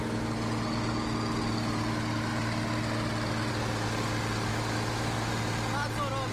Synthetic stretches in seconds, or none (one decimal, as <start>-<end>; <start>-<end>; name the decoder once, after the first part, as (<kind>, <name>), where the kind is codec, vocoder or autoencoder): 4.5-5.3 (autoencoder, DAC-VAE)